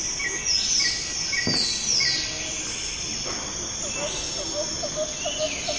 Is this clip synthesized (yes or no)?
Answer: no